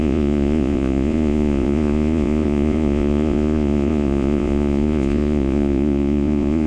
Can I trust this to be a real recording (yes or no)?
no